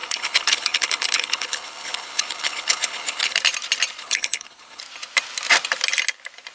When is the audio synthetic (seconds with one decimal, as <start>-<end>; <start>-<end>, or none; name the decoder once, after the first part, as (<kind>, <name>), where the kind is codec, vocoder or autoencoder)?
0.0-3.4 (codec, HILCodec); 4.0-4.8